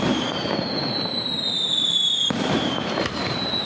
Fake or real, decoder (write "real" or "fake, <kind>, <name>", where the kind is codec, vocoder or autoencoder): fake, vocoder, BigVGAN v2